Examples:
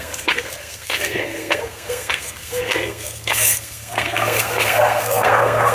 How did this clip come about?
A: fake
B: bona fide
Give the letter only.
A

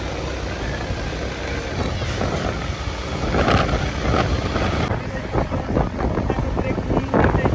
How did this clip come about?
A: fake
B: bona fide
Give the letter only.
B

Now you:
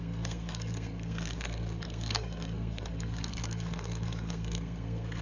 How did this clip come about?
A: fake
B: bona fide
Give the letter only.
A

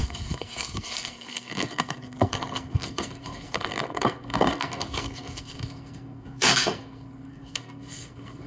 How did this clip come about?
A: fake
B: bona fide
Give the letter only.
A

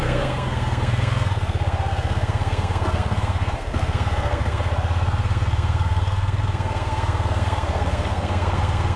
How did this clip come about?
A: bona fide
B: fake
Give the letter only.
B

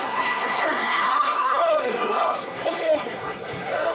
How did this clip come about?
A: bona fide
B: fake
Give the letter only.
B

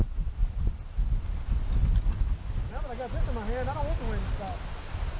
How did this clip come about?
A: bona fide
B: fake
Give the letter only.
A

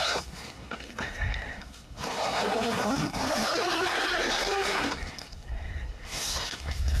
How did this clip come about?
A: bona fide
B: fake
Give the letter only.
B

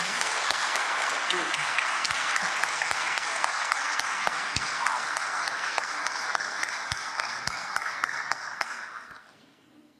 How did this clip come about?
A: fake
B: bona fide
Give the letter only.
A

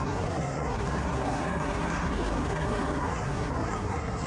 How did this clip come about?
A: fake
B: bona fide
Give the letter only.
A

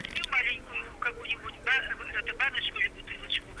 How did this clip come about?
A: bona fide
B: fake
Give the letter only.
A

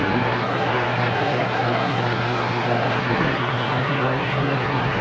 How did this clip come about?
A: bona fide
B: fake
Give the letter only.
B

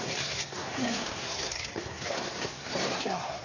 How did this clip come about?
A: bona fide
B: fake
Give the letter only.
B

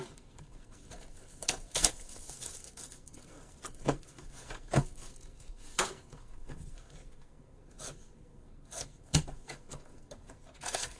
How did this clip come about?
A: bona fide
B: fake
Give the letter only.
B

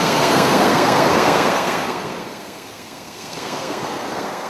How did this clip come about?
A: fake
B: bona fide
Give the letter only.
A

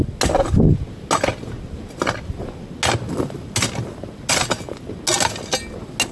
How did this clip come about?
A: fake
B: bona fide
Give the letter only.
B